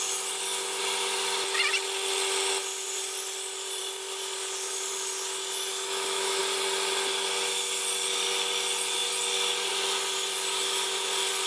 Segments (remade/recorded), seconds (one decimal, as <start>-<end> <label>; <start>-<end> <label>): 0.0-5.7 recorded; 5.7-6.4 remade; 6.4-11.5 recorded